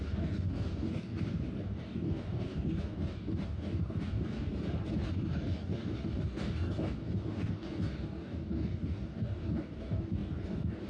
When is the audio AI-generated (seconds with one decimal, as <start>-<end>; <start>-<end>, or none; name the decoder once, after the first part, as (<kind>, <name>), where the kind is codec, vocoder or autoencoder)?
0.0-4.5 (codec, DAC); 5.1-10.9

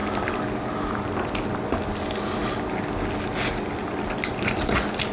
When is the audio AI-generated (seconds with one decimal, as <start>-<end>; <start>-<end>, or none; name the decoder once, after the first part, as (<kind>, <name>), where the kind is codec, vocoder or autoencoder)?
none

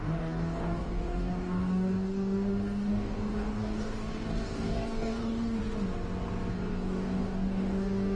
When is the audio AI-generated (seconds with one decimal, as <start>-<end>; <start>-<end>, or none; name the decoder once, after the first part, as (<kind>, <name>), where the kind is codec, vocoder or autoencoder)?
0.0-5.6 (codec, DAC); 6.5-8.2

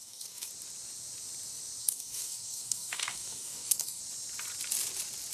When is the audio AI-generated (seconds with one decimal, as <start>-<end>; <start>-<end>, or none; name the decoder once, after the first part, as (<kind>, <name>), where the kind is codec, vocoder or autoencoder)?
0.0-0.5 (codec, DAC); 1.8-4.0

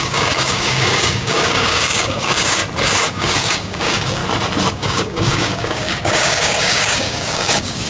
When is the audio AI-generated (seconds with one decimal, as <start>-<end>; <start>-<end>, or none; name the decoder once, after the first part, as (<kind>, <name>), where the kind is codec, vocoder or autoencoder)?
0.0-2.6 (codec, DAC); 3.1-4.2; 4.7-7.9